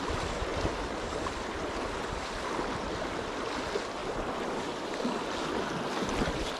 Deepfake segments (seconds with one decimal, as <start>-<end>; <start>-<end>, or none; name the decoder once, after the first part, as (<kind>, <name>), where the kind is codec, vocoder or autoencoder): 0.5-3.3 (vocoder, BigVGAN v2); 4.0-5.0